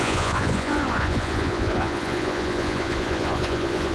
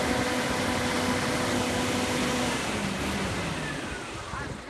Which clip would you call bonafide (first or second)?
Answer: second